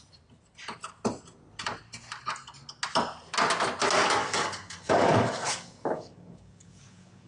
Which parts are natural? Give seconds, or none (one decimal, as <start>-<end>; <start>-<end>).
0.0-4.2

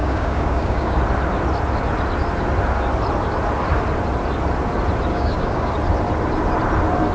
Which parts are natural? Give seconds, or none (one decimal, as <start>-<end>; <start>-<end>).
1.0-5.1; 5.7-7.1

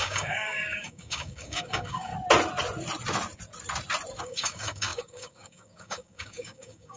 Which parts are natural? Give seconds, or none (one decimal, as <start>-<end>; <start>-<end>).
2.1-4.2